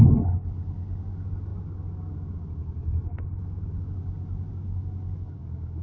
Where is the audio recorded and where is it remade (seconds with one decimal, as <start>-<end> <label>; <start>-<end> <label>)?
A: 0.0-5.8 recorded